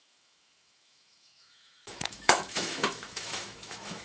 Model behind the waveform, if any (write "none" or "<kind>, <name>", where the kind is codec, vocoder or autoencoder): autoencoder, DAC-VAE